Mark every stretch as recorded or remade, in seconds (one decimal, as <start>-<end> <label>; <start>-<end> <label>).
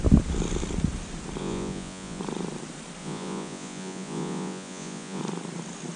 0.0-1.4 recorded; 1.4-2.2 remade; 2.2-3.0 recorded; 3.0-5.2 remade; 5.2-6.0 recorded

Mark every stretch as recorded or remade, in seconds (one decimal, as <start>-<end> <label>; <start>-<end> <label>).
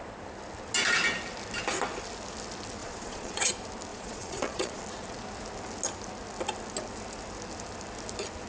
0.0-2.8 recorded; 2.8-3.4 remade; 3.4-3.9 recorded; 3.9-4.8 remade; 4.8-8.5 recorded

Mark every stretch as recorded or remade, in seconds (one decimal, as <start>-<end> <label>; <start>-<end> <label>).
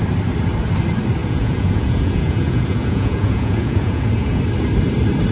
0.0-1.2 recorded; 1.2-4.4 remade; 4.4-5.3 recorded